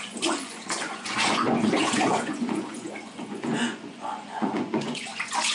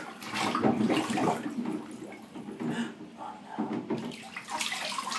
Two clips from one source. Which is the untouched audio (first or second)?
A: second